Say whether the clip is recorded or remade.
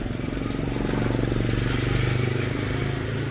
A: recorded